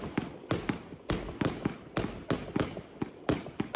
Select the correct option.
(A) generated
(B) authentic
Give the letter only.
B